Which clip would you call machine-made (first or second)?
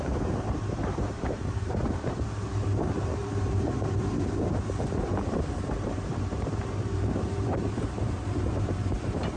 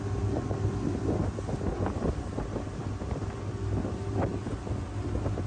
first